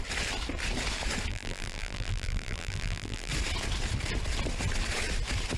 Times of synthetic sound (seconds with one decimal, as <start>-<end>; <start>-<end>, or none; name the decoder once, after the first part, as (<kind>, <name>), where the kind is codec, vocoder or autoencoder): 1.3-3.3 (vocoder, BigVGAN v2)